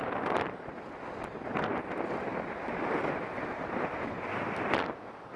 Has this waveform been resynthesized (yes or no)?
no